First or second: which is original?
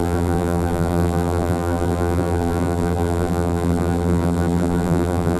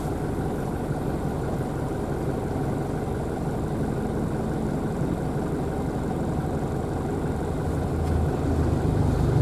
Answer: second